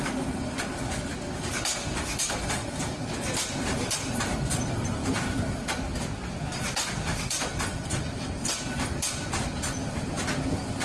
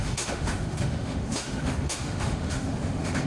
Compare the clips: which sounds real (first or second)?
first